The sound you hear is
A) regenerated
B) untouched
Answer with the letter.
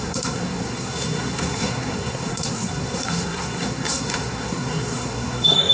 A